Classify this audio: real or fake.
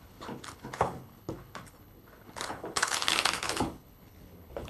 fake